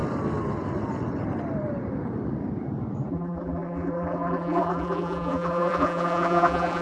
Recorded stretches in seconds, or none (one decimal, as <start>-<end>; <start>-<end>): 0.0-3.1